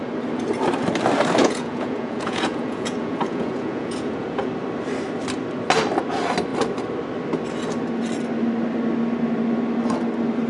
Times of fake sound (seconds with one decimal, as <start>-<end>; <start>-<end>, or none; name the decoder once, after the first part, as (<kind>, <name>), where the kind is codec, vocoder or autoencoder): 1.4-4.5 (vocoder, Vocos)